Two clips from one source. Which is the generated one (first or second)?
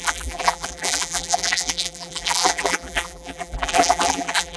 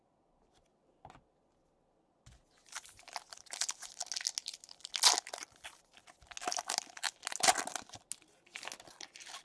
first